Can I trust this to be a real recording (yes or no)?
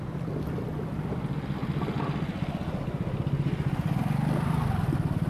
yes